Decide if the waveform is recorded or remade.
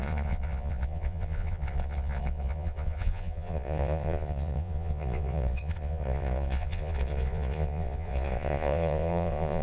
remade